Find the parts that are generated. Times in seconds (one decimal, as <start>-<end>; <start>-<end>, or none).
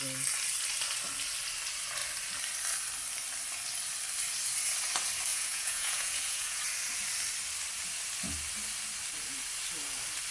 5.3-6.6